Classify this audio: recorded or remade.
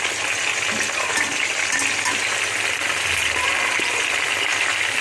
recorded